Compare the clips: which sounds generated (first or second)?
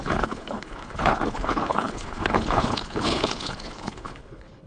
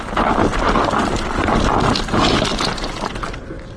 first